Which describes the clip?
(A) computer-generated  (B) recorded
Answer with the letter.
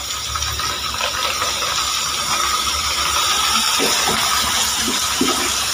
B